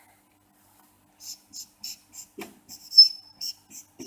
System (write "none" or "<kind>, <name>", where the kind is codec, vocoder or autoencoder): none